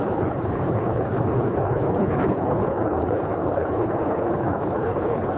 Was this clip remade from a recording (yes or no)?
yes